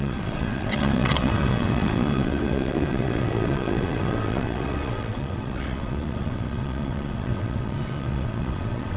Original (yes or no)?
no